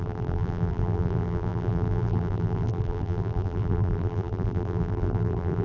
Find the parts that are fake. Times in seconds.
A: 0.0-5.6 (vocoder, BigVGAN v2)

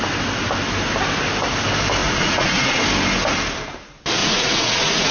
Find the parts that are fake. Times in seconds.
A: 2.0-2.8 (vocoder, Vocos); 4.2-5.1